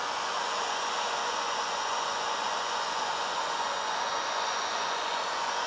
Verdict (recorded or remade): remade